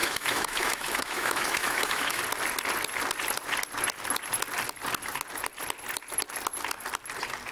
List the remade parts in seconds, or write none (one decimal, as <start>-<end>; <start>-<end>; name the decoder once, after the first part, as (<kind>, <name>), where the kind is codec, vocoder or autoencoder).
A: 0.0-2.2 (autoencoder, DAC-VAE)